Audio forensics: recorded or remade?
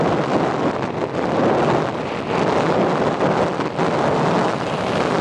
recorded